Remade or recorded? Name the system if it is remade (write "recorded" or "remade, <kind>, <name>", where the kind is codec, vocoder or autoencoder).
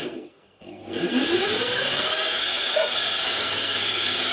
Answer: remade, codec, SNAC